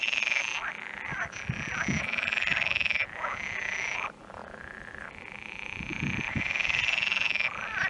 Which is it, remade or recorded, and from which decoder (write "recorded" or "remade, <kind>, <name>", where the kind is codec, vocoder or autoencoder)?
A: recorded